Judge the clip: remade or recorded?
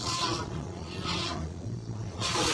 remade